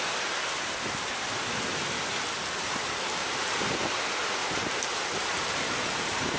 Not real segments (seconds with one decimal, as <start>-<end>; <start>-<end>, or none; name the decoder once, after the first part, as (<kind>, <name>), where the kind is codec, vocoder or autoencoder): 3.2-3.9 (vocoder, BigVGAN v2); 4.4-6.4